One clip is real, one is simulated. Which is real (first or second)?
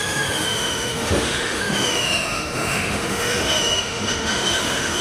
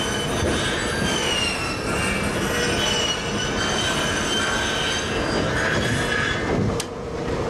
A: second